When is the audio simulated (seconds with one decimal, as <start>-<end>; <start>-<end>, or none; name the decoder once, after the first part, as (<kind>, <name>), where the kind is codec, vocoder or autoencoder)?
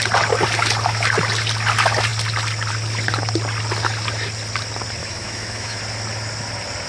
5.0-5.8 (autoencoder, DAC-VAE)